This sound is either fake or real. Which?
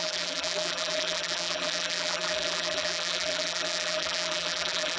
fake